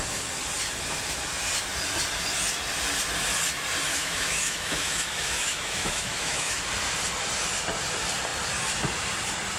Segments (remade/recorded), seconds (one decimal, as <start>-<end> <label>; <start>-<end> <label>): 0.0-3.9 recorded; 3.9-6.6 remade; 6.6-9.6 recorded

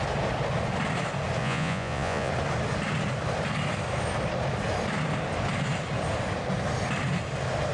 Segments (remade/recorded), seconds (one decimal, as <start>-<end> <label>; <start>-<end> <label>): 0.0-1.4 recorded; 1.4-2.3 remade; 2.3-7.7 recorded